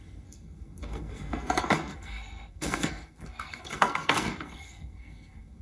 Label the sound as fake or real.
fake